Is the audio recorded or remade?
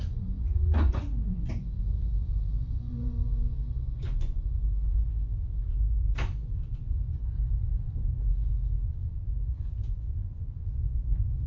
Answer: remade